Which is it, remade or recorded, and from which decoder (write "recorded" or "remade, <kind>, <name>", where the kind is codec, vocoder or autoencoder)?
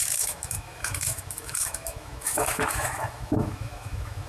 remade, autoencoder, DAC-VAE